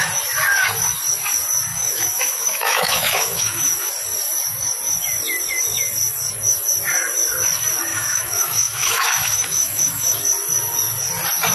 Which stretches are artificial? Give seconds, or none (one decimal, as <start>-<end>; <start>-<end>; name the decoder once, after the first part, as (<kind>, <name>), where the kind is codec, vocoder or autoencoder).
1.7-3.9 (autoencoder, DAC-VAE); 7.9-10.2